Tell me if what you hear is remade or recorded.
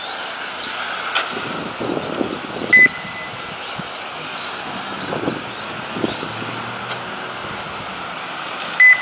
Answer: recorded